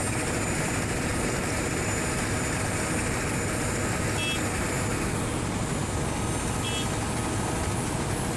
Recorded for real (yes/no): yes